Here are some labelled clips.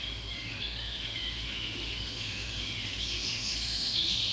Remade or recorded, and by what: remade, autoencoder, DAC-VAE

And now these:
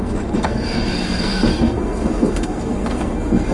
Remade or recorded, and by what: remade, codec, SNAC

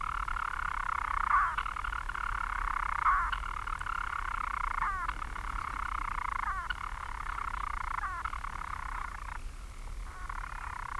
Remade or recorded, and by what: recorded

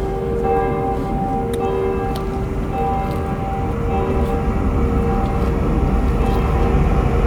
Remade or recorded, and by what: recorded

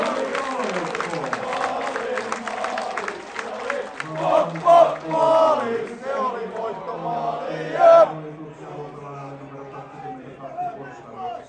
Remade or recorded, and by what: recorded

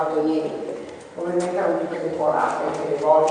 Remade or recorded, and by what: recorded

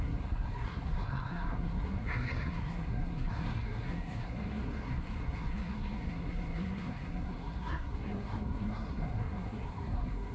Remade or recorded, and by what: remade, codec, SNAC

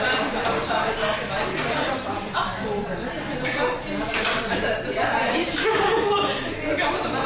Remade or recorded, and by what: remade, vocoder, BigVGAN v2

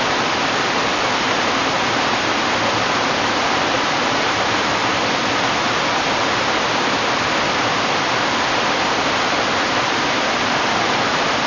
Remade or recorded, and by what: recorded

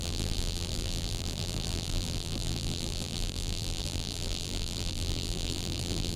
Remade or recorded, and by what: remade, vocoder, BigVGAN v2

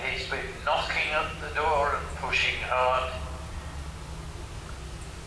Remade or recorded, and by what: recorded